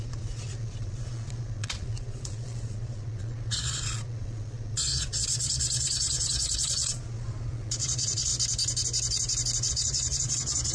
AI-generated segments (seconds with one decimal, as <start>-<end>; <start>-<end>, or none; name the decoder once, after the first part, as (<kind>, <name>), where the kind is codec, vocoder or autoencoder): 0.0-8.3 (vocoder, Vocos); 9.7-10.7

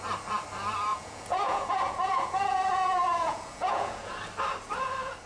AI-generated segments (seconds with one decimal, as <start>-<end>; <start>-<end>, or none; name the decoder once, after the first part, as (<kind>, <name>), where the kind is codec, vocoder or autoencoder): 0.9-4.1 (vocoder, Vocos)

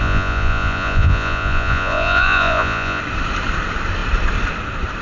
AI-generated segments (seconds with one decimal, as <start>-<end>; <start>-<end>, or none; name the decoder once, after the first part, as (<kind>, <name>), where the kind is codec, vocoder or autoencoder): 0.0-3.0 (vocoder, Vocos)

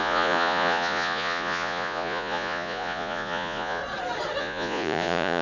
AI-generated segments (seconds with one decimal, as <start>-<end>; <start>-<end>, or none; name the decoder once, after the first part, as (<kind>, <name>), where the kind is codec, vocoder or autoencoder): 0.0-3.8 (vocoder, Vocos); 4.4-5.4

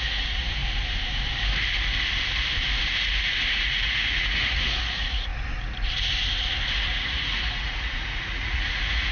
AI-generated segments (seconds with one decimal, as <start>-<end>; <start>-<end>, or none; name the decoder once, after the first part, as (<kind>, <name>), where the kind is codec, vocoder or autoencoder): 0.0-0.6 (vocoder, Vocos); 3.6-5.3; 6.9-9.1

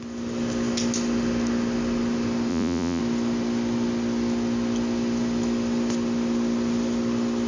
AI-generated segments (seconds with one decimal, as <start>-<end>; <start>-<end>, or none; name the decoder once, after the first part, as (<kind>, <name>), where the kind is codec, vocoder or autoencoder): 2.5-3.0 (vocoder, Vocos)

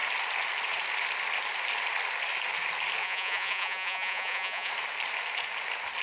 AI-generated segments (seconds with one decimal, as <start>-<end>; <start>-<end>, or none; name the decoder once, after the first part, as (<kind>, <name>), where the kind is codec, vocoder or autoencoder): 3.0-4.7 (vocoder, Vocos)

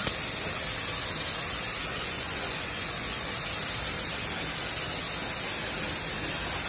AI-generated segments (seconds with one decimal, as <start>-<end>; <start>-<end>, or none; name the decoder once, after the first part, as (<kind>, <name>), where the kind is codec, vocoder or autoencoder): 1.9-3.3 (vocoder, Vocos)